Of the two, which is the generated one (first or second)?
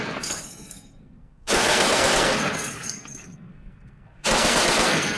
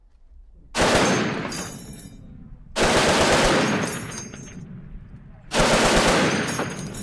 first